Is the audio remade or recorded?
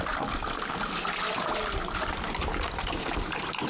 recorded